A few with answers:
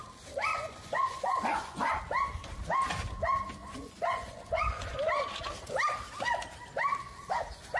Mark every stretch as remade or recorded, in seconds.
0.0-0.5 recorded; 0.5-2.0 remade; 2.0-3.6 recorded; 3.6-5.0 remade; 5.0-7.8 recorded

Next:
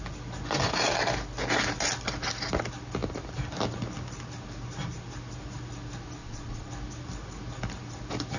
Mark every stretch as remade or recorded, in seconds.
0.0-6.2 recorded; 6.2-6.7 remade; 6.7-8.4 recorded

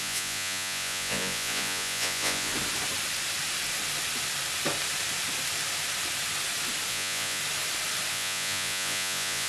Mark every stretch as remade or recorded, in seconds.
0.0-2.5 remade; 2.5-6.9 recorded; 6.9-7.4 remade; 7.4-8.1 recorded; 8.1-9.5 remade

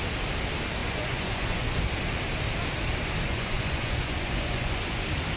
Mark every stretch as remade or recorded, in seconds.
0.0-0.8 recorded; 0.8-1.8 remade; 1.8-3.3 recorded; 3.3-5.0 remade; 5.0-5.4 recorded

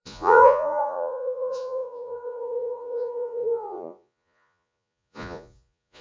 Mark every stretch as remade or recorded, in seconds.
0.0-6.0 remade

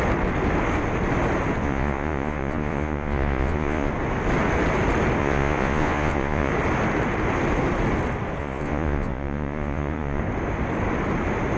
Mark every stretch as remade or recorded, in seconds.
0.0-1.6 recorded; 1.6-3.9 remade; 3.9-5.2 recorded; 5.2-6.5 remade; 6.5-8.4 recorded; 8.4-10.2 remade; 10.2-11.6 recorded

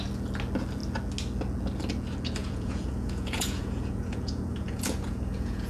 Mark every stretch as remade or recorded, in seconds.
0.0-2.4 recorded; 2.4-5.7 remade

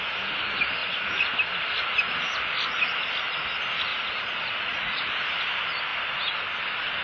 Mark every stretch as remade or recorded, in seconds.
0.0-0.8 recorded; 0.8-1.3 remade; 1.3-3.9 recorded; 3.9-5.1 remade; 5.1-7.0 recorded